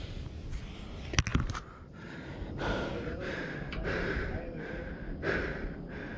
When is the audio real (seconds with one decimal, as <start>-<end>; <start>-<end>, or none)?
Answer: 0.0-1.3; 5.0-6.2